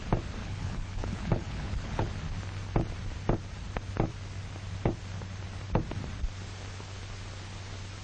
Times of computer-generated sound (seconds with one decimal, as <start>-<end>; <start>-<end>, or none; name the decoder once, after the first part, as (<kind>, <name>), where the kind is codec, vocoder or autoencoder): 0.4-2.1 (codec, HILCodec)